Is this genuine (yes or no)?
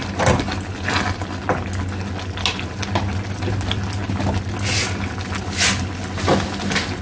yes